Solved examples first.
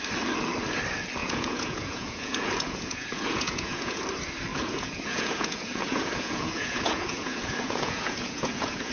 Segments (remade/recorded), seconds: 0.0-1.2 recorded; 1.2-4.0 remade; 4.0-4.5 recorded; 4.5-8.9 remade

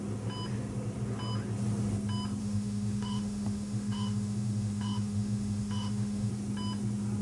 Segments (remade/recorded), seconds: 0.0-2.4 recorded; 2.4-6.3 remade; 6.3-7.2 recorded

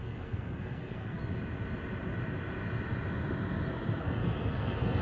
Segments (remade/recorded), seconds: 0.0-1.2 remade; 1.2-4.0 recorded; 4.0-5.0 remade